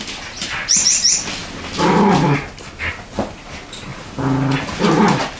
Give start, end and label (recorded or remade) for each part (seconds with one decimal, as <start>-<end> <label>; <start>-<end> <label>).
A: 0.0-5.4 recorded